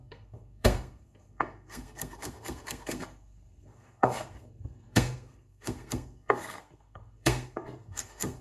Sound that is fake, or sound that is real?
fake